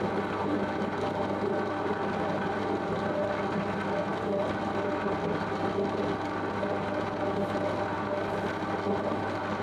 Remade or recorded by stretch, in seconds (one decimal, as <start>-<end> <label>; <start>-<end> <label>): 0.0-0.4 recorded; 0.4-1.0 remade; 1.0-9.6 recorded